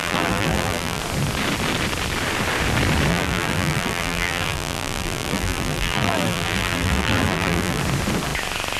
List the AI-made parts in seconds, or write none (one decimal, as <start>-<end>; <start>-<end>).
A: 0.0-1.0; 3.1-7.8